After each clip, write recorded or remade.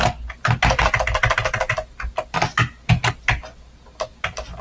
recorded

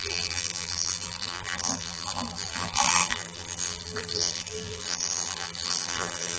remade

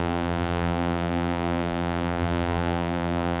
remade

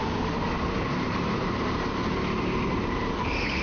remade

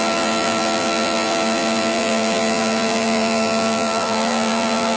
remade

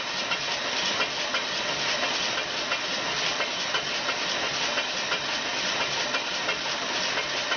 recorded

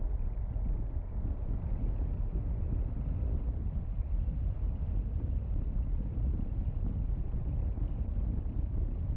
recorded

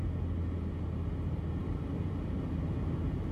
recorded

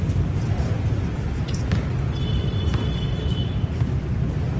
recorded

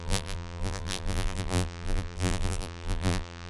remade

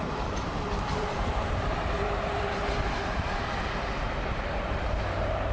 remade